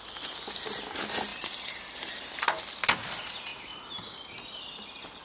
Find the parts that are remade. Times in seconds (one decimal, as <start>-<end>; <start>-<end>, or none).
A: 1.3-2.4

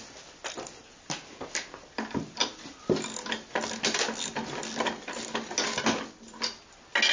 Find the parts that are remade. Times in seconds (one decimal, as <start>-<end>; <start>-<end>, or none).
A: none

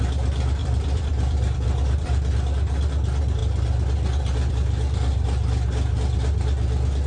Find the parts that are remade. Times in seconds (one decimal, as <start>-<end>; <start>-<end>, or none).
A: 0.6-2.3

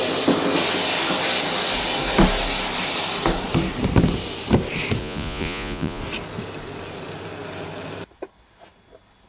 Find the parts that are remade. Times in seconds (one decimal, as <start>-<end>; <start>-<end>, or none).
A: 5.0-6.0